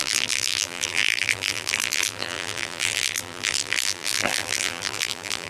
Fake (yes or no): yes